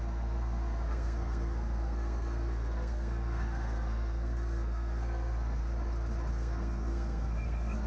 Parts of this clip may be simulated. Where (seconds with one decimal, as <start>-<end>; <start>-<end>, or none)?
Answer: 0.0-5.6; 6.3-7.9